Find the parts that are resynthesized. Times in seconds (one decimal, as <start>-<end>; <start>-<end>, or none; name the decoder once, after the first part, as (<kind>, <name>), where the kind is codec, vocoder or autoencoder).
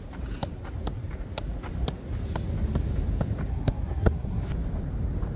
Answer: 3.5-4.4 (codec, SNAC)